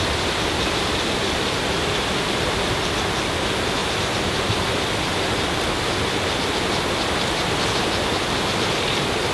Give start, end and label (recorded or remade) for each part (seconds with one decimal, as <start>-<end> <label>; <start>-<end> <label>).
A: 0.0-3.8 remade; 3.8-7.2 recorded; 7.2-9.3 remade